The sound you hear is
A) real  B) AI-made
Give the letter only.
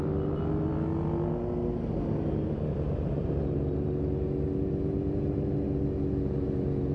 A